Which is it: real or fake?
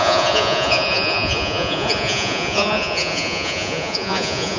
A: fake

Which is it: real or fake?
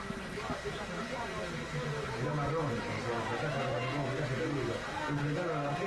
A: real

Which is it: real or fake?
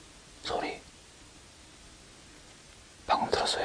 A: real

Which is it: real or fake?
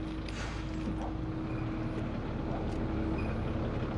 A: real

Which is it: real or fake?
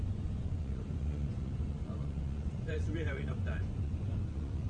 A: fake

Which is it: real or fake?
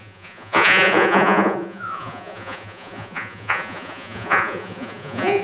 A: fake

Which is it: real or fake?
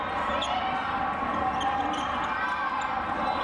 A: real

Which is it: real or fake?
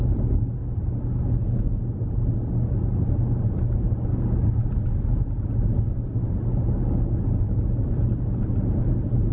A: real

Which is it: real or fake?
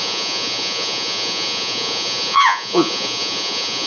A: fake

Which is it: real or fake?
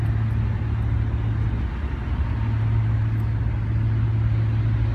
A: real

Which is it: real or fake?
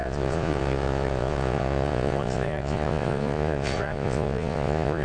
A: fake